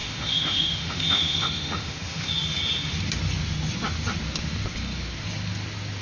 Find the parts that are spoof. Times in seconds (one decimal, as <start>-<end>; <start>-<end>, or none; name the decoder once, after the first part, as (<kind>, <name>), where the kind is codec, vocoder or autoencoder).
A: 0.0-2.3 (autoencoder, DAC-VAE)